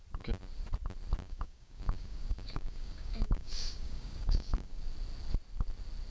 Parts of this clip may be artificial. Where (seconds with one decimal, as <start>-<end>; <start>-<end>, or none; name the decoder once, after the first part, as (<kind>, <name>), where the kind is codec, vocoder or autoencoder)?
1.2-4.9 (codec, DAC)